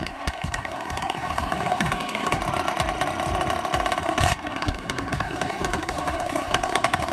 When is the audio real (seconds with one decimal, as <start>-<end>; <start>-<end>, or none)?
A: 2.4-4.0